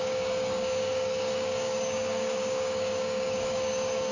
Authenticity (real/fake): fake